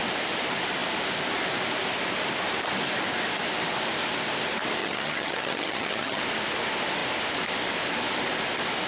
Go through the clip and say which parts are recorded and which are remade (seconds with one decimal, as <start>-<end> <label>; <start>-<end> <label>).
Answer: 0.0-4.8 recorded; 4.8-6.2 remade; 6.2-8.9 recorded